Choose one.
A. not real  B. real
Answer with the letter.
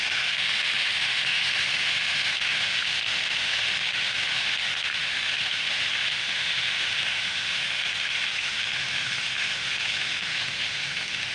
A